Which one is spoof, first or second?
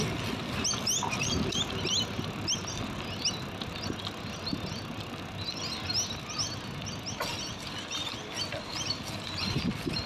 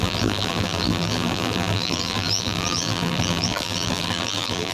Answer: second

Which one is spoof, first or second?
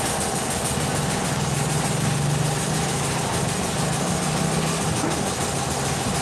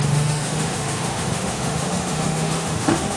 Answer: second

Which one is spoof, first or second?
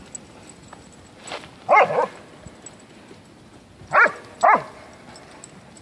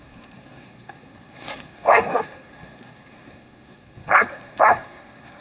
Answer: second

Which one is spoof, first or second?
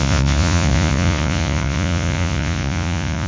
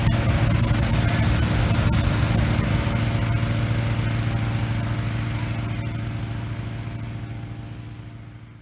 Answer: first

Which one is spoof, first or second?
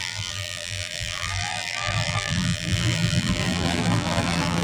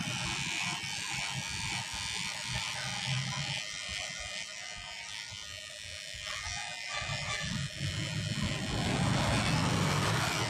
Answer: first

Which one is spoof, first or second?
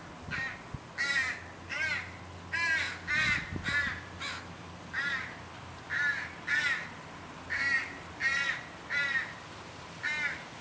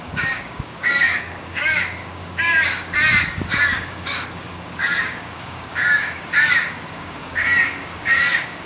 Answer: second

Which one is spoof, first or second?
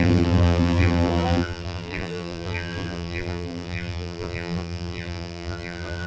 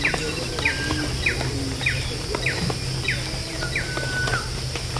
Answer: first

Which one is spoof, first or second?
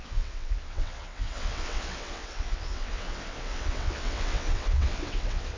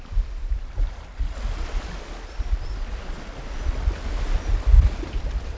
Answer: first